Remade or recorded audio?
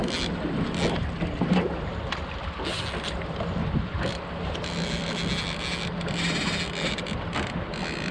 recorded